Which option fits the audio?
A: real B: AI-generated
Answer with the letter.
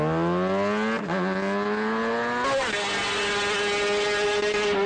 A